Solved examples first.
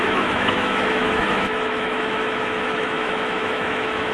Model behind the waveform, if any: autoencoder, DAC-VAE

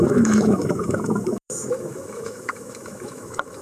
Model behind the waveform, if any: autoencoder, DAC-VAE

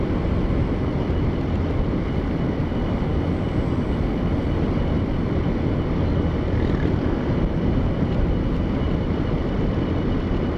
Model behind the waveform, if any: none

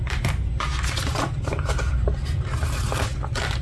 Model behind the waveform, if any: none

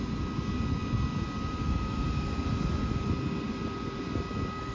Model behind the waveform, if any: none